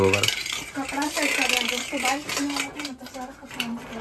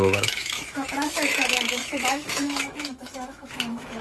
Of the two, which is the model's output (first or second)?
second